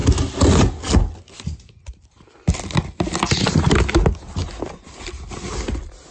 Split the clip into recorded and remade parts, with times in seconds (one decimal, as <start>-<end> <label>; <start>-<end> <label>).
0.0-6.1 recorded